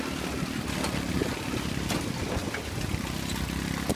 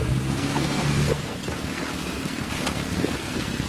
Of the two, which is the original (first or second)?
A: first